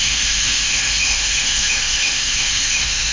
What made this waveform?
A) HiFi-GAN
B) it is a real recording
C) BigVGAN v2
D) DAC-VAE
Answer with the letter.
D